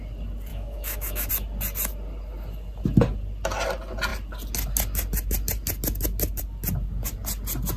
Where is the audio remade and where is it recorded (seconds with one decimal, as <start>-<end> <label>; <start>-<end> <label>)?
0.0-0.5 recorded; 0.5-1.3 remade; 1.3-7.8 recorded